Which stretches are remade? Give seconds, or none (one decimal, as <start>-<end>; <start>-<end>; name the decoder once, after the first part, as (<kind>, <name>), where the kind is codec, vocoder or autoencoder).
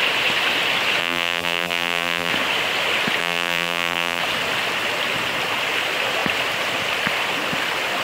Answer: 1.0-2.3 (vocoder, BigVGAN v2); 3.2-4.2